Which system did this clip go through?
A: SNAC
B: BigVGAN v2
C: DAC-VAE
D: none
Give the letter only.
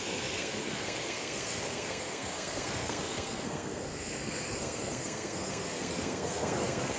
A